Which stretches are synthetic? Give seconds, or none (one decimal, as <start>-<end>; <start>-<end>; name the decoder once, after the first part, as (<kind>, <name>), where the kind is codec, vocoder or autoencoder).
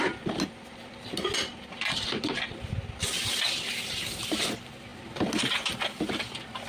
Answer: none